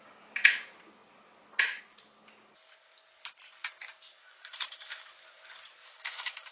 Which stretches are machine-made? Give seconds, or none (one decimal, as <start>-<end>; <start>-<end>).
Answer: 4.2-5.1; 5.8-6.5